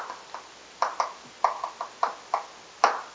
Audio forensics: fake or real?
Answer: real